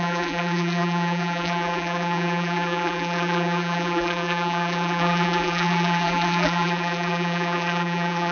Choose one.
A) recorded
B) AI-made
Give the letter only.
B